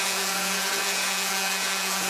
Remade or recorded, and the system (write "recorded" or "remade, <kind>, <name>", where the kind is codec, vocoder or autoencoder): remade, vocoder, Vocos